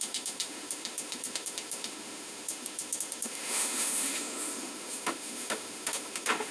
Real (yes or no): no